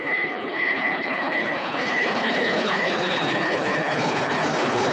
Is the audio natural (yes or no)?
no